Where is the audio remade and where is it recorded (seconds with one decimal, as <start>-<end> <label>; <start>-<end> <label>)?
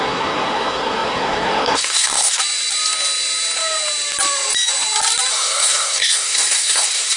0.0-2.4 remade; 2.4-5.3 recorded; 5.3-7.2 remade